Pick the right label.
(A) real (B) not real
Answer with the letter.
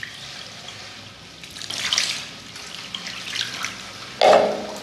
A